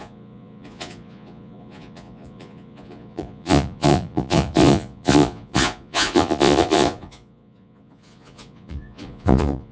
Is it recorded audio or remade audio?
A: remade